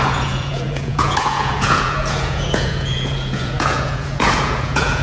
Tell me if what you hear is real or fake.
fake